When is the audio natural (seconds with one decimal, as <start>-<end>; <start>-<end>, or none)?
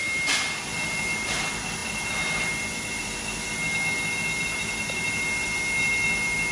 0.0-6.5